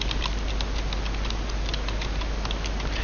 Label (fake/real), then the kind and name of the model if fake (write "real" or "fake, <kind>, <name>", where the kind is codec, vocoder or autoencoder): real